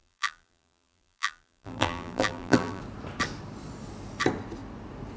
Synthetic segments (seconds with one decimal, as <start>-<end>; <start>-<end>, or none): 0.0-2.8